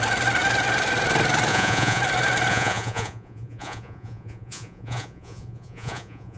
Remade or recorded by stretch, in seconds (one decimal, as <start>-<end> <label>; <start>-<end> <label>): 0.0-1.5 recorded; 1.5-2.0 remade; 2.0-2.5 recorded; 2.5-6.4 remade

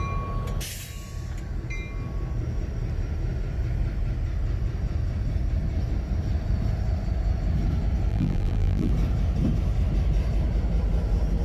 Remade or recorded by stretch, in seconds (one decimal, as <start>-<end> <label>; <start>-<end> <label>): 0.0-8.1 recorded; 8.1-8.9 remade; 8.9-11.4 recorded

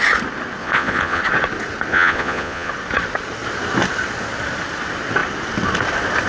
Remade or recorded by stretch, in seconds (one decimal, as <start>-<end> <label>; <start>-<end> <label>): 0.0-0.6 recorded; 0.6-1.2 remade; 1.2-1.9 recorded; 1.9-2.7 remade; 2.7-6.3 recorded

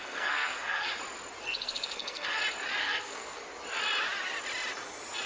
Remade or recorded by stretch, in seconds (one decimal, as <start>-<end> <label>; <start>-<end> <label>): 0.0-0.9 remade; 0.9-1.4 recorded; 1.4-2.4 remade; 2.4-2.8 recorded; 2.8-3.4 remade; 3.4-5.3 recorded

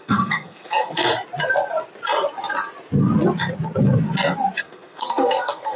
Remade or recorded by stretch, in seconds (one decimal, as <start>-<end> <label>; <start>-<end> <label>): 0.0-1.1 remade; 1.1-4.6 recorded; 4.6-5.8 remade

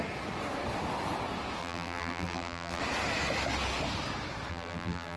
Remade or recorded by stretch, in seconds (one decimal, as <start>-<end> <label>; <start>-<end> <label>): 0.0-1.6 recorded; 1.6-2.8 remade; 2.8-4.5 recorded; 4.5-5.2 remade